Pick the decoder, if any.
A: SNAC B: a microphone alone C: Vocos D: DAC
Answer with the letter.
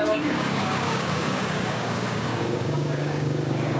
D